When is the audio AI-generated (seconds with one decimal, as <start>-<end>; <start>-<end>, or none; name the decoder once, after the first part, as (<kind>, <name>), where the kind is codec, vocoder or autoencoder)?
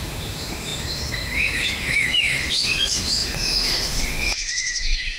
0.0-5.2 (autoencoder, DAC-VAE)